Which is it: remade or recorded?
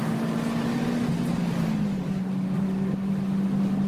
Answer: recorded